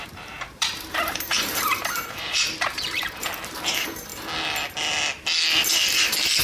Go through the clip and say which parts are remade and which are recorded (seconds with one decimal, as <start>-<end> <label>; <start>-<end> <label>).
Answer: 0.0-4.1 remade; 4.1-5.7 recorded; 5.7-6.4 remade